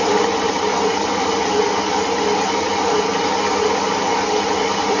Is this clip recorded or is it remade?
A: recorded